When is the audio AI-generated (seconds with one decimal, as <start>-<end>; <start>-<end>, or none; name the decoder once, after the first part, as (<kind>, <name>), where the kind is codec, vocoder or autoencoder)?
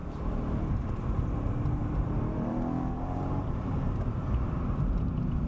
0.0-0.9 (vocoder, BigVGAN v2); 1.8-5.1